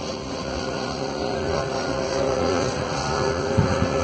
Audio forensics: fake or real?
fake